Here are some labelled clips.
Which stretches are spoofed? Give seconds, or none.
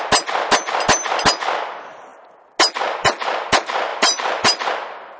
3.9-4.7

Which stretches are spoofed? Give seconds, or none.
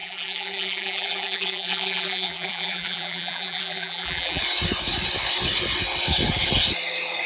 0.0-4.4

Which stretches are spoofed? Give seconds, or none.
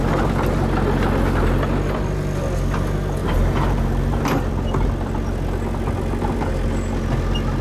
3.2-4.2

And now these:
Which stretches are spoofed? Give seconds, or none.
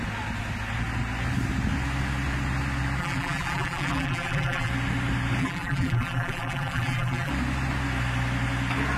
3.0-4.7; 5.4-7.3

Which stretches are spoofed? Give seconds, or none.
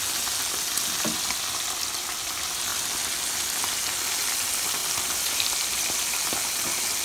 none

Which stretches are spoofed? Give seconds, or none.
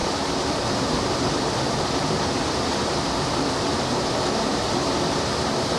1.8-3.7; 4.5-5.8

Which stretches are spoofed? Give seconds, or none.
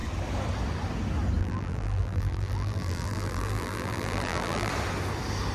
1.4-4.7